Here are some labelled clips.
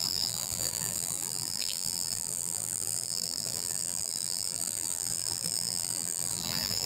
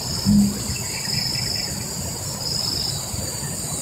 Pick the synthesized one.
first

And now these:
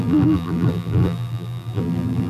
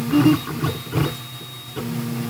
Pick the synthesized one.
first